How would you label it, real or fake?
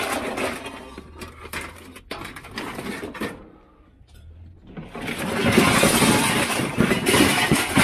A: real